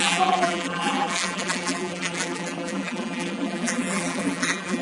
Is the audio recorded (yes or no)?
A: no